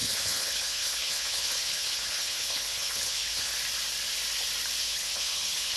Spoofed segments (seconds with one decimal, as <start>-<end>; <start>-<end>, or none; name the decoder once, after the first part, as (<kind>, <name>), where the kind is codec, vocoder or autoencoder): 0.0-3.5 (codec, HILCodec); 4.8-5.8